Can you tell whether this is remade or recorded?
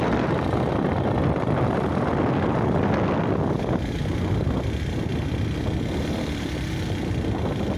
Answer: recorded